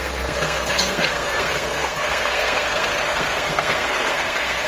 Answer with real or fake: fake